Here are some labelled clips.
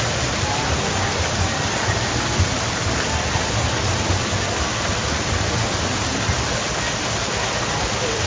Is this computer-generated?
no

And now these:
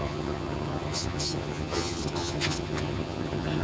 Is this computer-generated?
yes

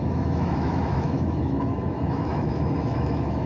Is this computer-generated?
yes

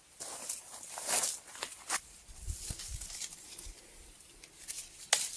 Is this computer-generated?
no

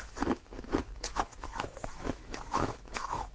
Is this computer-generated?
yes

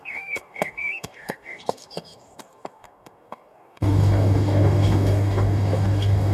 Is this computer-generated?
yes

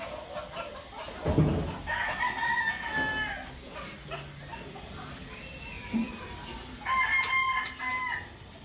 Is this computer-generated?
no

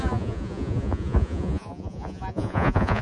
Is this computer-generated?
yes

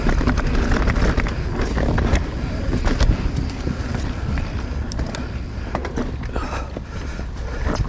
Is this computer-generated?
no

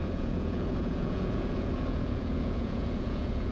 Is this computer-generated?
yes